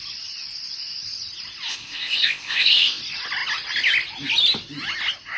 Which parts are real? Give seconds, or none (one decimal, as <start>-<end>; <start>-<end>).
0.0-1.7; 3.0-5.4